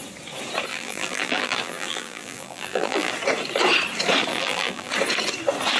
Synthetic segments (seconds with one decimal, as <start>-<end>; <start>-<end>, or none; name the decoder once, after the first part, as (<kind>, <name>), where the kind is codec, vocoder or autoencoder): 0.7-3.1 (vocoder, BigVGAN v2); 4.3-4.9

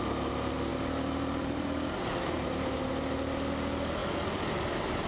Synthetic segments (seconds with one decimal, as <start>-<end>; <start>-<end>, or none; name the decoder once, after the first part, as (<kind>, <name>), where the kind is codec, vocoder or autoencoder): 0.7-2.9 (vocoder, BigVGAN v2)

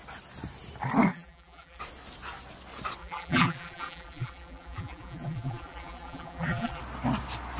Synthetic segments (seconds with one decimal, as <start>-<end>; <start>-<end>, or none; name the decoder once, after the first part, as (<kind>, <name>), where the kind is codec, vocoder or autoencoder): 1.1-1.8 (vocoder, BigVGAN v2); 3.0-6.8

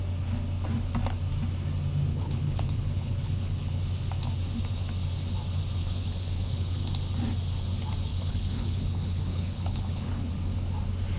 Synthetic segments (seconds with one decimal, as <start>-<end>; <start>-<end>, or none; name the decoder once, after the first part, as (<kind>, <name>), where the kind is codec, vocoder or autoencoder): 2.1-3.8 (codec, HILCodec); 5.8-6.9; 8.1-10.3

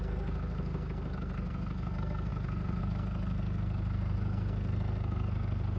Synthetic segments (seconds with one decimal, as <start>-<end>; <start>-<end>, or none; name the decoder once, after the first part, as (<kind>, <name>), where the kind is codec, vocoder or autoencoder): 0.0-5.8 (codec, SNAC)

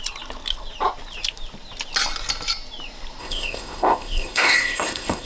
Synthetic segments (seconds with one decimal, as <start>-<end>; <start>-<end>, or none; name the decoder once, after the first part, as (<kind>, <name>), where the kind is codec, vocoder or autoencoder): 3.2-5.3 (codec, ZipCodec)

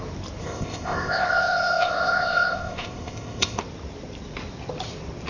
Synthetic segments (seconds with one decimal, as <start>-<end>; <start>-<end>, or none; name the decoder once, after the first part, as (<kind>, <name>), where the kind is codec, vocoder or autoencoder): 0.4-3.6 (codec, ZipCodec)

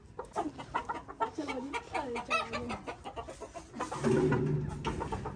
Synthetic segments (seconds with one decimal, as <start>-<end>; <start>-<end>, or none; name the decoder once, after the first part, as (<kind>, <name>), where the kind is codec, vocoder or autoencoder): none